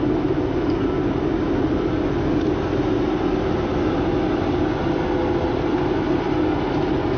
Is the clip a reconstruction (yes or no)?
no